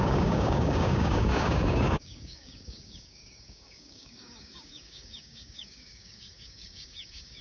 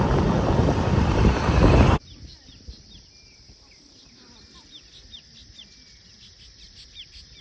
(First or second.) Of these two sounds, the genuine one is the second